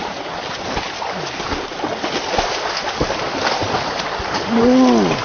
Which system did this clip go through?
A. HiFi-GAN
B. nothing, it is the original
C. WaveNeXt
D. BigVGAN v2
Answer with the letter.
B